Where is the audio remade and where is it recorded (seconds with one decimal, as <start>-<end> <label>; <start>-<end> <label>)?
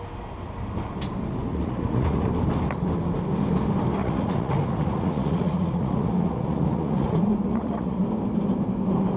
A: 0.0-1.5 recorded; 1.5-2.3 remade; 2.3-4.0 recorded; 4.0-8.0 remade; 8.0-9.2 recorded